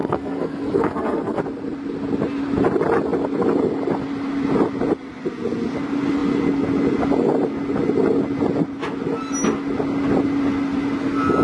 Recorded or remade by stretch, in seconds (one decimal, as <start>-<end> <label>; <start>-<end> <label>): 0.0-1.4 remade; 1.4-11.4 recorded